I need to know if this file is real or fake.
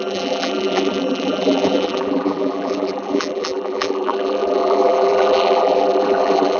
fake